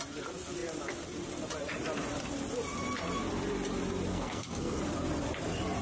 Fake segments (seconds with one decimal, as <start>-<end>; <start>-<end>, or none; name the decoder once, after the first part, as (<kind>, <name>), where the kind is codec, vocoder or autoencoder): 4.1-4.8 (codec, SNAC)